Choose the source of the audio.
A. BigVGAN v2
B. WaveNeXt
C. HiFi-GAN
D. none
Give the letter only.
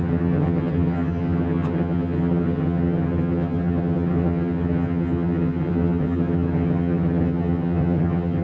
C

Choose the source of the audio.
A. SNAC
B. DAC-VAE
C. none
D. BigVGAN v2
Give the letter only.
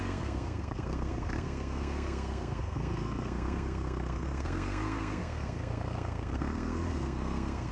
A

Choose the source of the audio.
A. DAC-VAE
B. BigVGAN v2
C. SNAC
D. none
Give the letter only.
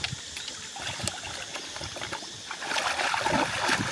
D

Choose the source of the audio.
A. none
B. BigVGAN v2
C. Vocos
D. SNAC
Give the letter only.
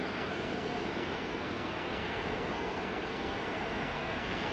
D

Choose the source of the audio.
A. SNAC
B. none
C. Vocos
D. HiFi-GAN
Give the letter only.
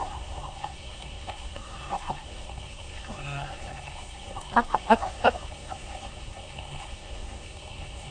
A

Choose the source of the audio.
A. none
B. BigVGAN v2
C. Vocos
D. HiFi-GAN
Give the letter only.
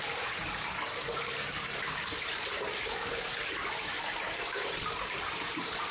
B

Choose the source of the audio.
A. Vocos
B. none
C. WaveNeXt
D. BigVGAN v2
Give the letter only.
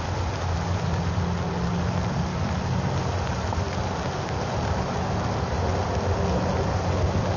B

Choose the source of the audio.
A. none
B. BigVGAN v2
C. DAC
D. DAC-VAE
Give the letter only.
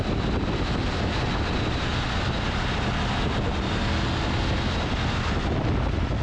A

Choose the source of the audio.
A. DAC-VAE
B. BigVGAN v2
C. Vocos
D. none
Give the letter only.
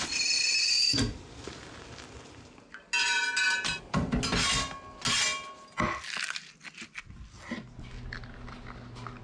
D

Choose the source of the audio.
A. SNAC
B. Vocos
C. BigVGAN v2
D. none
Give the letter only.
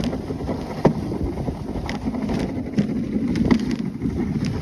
D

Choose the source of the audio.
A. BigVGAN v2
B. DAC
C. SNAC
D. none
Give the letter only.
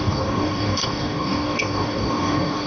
B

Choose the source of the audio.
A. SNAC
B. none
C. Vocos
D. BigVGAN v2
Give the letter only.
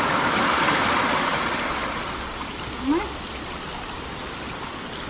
B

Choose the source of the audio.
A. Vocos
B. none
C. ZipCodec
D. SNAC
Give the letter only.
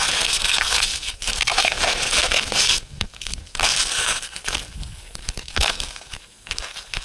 D